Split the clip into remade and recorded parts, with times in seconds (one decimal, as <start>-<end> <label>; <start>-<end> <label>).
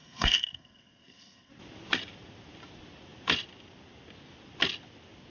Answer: 0.0-1.5 remade; 1.5-5.3 recorded